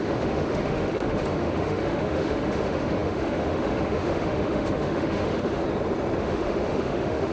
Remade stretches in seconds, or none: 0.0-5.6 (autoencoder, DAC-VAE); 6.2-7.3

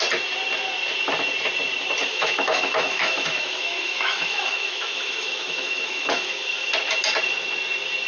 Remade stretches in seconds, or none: 2.0-6.7 (autoencoder, DAC-VAE)

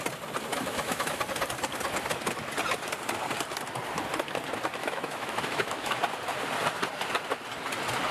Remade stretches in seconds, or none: 0.5-1.2 (autoencoder, DAC-VAE); 4.8-6.0

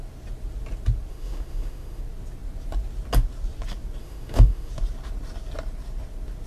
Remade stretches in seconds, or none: 1.1-2.0 (autoencoder, DAC-VAE); 4.0-4.7

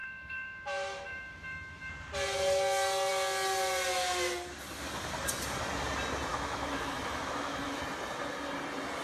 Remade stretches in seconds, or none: 0.0-1.9 (autoencoder, DAC-VAE); 6.3-7.8

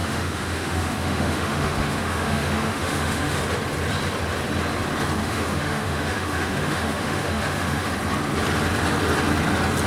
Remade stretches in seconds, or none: 0.0-3.4 (autoencoder, DAC-VAE); 5.2-7.9

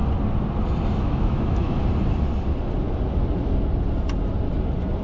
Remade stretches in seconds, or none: 1.0-1.8 (autoencoder, DAC-VAE)